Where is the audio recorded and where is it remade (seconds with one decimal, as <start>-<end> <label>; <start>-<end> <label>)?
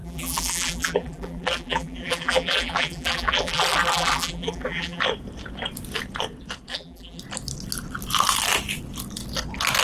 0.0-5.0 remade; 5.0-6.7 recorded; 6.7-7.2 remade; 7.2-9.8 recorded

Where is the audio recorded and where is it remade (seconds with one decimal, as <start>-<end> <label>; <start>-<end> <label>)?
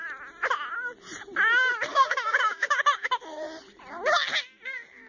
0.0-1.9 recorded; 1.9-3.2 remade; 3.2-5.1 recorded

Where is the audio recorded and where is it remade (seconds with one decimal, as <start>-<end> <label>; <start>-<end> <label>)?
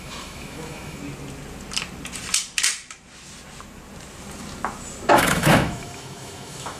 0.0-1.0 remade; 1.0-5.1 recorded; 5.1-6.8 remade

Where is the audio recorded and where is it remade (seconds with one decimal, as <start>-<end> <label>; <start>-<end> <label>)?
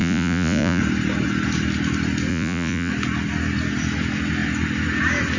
0.0-0.8 remade; 0.8-2.3 recorded; 2.3-2.9 remade; 2.9-5.4 recorded